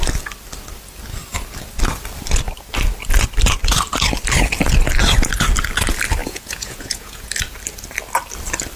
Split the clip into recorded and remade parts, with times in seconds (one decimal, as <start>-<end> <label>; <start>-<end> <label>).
0.0-6.2 recorded; 6.2-7.3 remade; 7.3-8.8 recorded

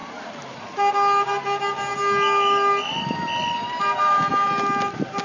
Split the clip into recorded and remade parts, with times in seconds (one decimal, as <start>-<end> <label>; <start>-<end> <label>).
0.0-5.2 recorded

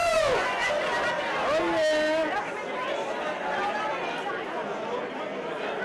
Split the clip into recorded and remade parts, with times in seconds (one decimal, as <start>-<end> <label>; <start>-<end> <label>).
0.0-0.7 remade; 0.7-5.8 recorded

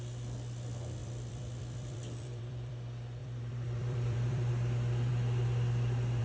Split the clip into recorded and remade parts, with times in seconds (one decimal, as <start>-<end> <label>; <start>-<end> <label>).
0.0-1.0 recorded; 1.0-2.7 remade; 2.7-3.2 recorded; 3.2-4.5 remade; 4.5-6.2 recorded

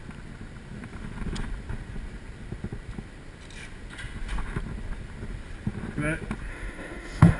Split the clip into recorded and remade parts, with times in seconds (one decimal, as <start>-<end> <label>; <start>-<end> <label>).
0.0-6.5 recorded; 6.5-7.4 remade

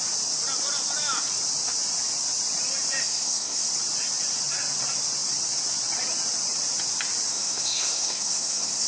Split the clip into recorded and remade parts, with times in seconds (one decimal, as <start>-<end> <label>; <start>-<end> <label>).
0.0-3.0 recorded; 3.0-3.7 remade; 3.7-7.3 recorded; 7.3-8.9 remade

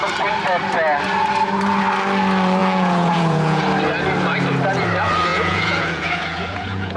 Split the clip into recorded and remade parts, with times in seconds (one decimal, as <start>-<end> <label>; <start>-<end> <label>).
0.0-2.6 recorded; 2.6-3.6 remade; 3.6-5.3 recorded; 5.3-7.0 remade